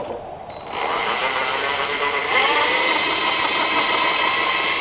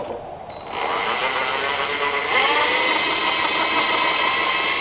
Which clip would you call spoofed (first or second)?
first